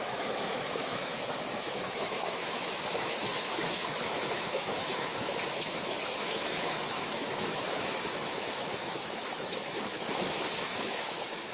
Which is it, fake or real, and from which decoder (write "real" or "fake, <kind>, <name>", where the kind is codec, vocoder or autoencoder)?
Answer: fake, autoencoder, DAC-VAE